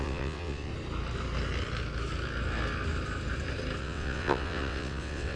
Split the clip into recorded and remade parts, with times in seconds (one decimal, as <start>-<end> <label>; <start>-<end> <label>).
0.0-0.7 remade; 0.7-3.8 recorded; 3.8-5.4 remade